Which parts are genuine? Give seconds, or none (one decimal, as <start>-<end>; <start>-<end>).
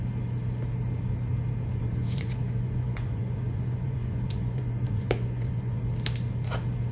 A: 0.0-1.8; 5.9-6.9